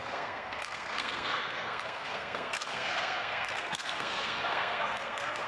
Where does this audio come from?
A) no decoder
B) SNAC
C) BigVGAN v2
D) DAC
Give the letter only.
B